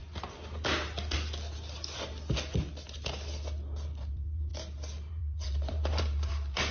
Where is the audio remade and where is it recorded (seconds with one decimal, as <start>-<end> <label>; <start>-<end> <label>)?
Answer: 0.0-4.0 recorded; 4.0-4.5 remade; 4.5-5.1 recorded; 5.1-6.7 remade